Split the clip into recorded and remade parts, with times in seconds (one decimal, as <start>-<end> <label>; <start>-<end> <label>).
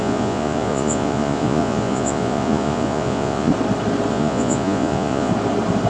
0.0-3.5 remade; 3.5-4.1 recorded; 4.1-5.3 remade; 5.3-5.9 recorded